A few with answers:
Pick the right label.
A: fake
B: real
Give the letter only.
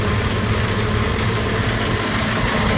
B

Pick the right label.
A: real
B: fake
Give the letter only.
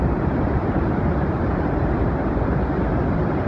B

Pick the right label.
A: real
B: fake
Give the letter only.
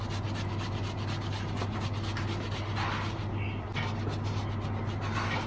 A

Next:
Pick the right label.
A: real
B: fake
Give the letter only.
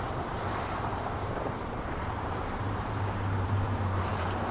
B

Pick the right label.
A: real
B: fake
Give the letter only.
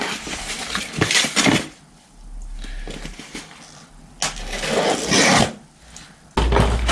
A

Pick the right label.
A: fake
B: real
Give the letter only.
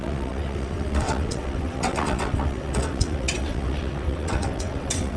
A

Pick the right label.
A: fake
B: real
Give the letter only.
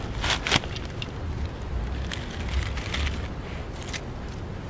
B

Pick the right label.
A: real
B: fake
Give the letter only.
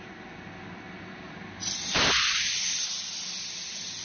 A